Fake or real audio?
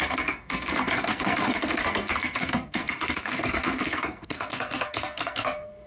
fake